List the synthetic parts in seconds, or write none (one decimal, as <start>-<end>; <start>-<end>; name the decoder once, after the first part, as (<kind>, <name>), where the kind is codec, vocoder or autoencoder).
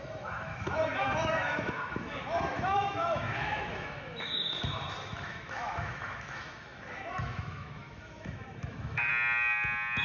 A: 0.0-9.1 (autoencoder, DAC-VAE)